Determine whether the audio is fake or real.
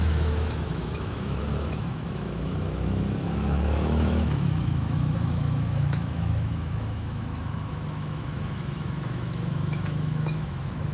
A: fake